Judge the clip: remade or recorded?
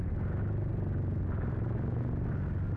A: recorded